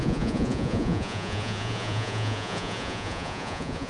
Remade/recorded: remade